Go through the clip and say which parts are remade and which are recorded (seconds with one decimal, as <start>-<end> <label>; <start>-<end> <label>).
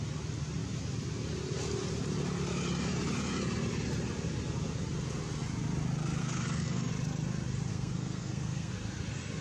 0.0-6.2 recorded; 6.2-6.9 remade; 6.9-7.7 recorded; 7.7-8.7 remade; 8.7-9.4 recorded